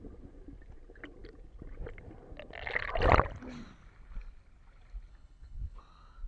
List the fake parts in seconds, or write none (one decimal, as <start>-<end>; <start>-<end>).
5.1-5.8